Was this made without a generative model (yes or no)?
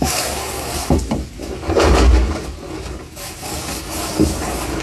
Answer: no